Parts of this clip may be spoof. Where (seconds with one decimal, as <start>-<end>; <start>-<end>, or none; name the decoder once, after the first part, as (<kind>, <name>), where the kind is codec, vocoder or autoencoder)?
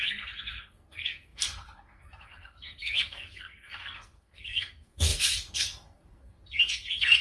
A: 0.0-7.2 (codec, SNAC)